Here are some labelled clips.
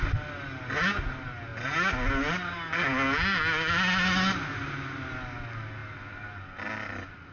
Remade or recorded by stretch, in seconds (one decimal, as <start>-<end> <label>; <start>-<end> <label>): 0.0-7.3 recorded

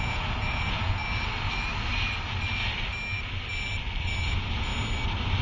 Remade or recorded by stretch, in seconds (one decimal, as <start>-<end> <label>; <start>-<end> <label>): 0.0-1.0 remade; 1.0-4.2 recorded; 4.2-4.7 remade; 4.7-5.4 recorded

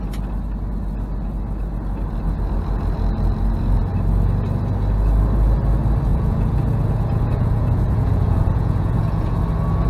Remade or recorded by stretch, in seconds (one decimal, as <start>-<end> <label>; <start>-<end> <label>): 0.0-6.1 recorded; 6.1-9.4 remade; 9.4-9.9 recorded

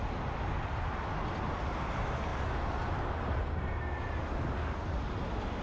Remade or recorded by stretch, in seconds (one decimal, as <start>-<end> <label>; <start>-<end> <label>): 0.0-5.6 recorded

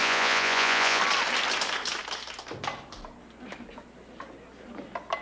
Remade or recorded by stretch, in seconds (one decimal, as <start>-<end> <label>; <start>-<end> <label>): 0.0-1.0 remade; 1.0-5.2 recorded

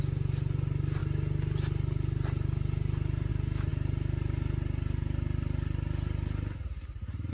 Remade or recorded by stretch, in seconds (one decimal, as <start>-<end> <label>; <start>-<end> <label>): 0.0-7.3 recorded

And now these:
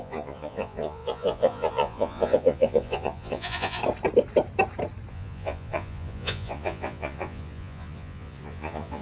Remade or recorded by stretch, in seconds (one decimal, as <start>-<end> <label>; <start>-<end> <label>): 0.0-3.8 remade; 3.8-5.1 recorded; 5.1-9.0 remade

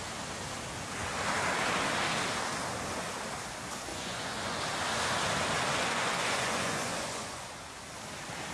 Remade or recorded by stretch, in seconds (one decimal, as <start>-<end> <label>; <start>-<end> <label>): 0.0-3.9 recorded; 3.9-4.6 remade; 4.6-5.7 recorded; 5.7-7.5 remade; 7.5-8.5 recorded